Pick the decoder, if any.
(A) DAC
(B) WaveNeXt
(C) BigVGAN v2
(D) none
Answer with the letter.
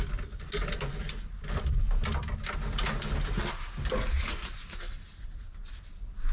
D